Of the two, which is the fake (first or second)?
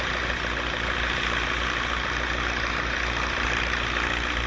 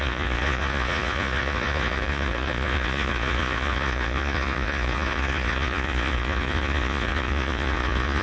second